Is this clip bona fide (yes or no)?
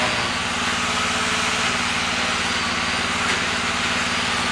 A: yes